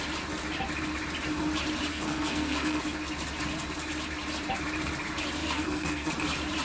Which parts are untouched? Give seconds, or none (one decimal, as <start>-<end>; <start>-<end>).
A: 0.0-1.9; 2.8-5.4; 6.1-6.6